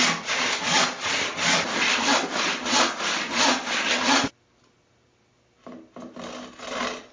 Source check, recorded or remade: recorded